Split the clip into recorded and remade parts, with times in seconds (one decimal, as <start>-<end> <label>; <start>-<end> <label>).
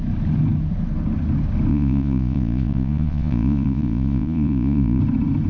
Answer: 0.0-1.7 recorded; 1.7-5.0 remade; 5.0-5.5 recorded